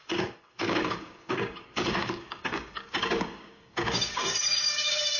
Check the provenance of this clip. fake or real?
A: fake